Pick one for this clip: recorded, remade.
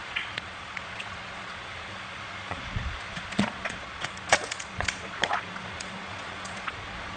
remade